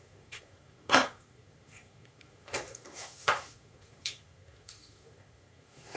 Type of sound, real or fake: fake